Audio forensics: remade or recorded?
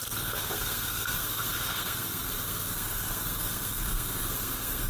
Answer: remade